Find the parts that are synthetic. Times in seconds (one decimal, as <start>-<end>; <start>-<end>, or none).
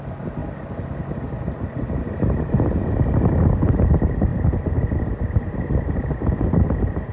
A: none